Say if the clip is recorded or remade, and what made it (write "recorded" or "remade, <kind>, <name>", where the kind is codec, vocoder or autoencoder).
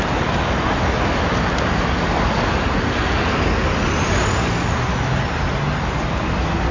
recorded